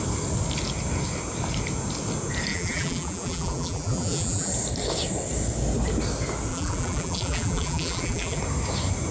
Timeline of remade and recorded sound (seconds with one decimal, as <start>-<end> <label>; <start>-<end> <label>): 0.0-2.5 recorded; 2.5-4.5 remade; 4.5-6.5 recorded; 6.5-8.4 remade; 8.4-9.1 recorded